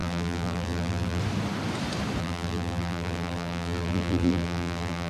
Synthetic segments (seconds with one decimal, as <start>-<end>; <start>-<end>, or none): 0.0-1.2; 2.2-5.1